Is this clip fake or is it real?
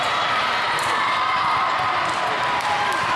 fake